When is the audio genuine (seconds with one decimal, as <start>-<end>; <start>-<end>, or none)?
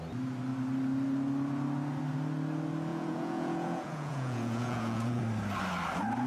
0.0-2.9; 5.2-6.3